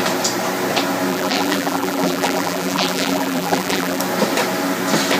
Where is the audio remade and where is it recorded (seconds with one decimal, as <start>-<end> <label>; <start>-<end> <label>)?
0.0-1.1 recorded; 1.1-4.0 remade; 4.0-5.2 recorded